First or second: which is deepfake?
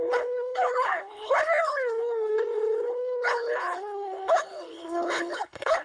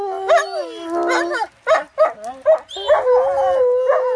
first